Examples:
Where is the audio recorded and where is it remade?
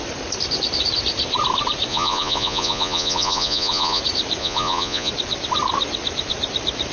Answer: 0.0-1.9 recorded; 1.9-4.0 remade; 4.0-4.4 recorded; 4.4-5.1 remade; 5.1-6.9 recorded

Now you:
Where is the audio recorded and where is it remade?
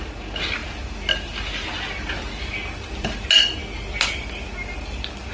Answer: 0.0-5.3 recorded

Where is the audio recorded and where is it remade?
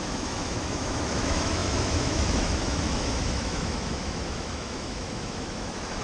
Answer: 0.0-6.0 remade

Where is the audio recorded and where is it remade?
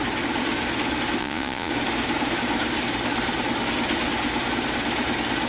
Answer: 0.0-1.2 recorded; 1.2-1.7 remade; 1.7-5.5 recorded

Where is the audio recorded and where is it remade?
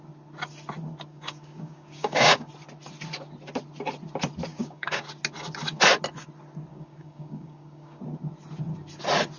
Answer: 0.0-1.1 recorded; 1.1-2.5 remade; 2.5-4.5 recorded; 4.5-5.0 remade; 5.0-6.7 recorded; 6.7-8.0 remade; 8.0-9.4 recorded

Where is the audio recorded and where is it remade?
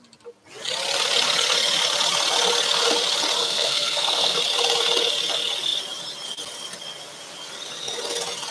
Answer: 0.0-3.4 recorded; 3.4-4.4 remade; 4.4-8.5 recorded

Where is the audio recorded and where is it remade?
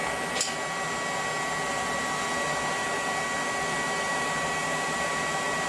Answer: 0.0-4.1 recorded; 4.1-5.1 remade; 5.1-5.7 recorded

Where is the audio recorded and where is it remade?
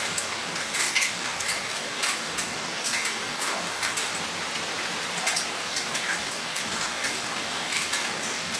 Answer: 0.0-4.1 remade; 4.1-5.5 recorded; 5.5-8.6 remade